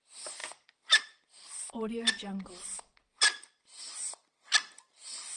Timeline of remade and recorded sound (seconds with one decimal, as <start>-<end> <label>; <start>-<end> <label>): 0.0-5.4 recorded